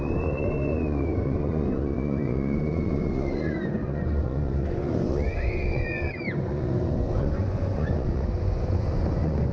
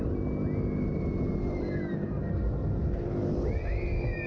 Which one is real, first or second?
second